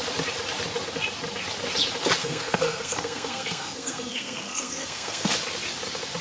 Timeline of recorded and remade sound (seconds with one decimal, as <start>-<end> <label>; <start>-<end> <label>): 0.0-2.2 recorded; 2.2-5.3 remade; 5.3-6.2 recorded